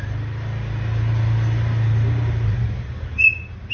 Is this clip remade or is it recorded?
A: recorded